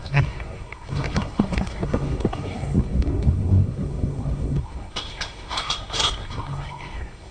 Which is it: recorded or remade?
remade